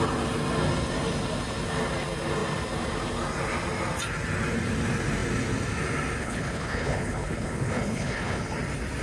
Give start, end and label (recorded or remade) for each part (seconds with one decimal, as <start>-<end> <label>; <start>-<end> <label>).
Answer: 0.0-6.2 recorded; 6.2-8.4 remade; 8.4-9.0 recorded